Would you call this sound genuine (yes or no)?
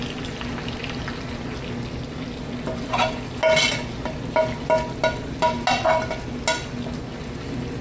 yes